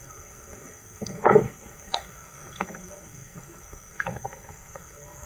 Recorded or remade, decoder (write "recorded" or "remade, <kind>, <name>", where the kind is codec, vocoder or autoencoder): remade, codec, SNAC